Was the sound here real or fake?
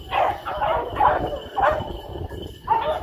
real